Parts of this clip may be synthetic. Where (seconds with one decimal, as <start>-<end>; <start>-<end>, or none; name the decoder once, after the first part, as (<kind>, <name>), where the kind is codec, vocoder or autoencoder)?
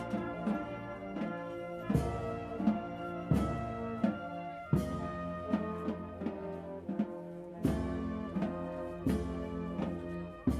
none